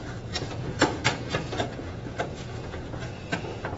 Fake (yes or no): yes